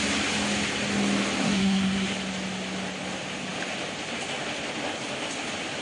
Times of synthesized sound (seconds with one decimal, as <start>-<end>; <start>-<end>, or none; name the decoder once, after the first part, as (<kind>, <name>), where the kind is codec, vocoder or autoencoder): 1.4-2.1 (codec, SNAC)